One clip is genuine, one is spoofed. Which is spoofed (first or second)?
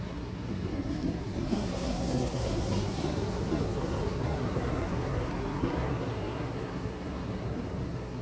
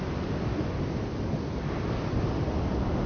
first